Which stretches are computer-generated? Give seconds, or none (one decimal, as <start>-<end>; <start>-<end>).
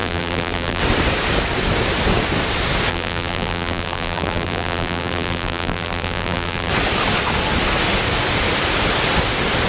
0.0-0.8; 2.9-6.7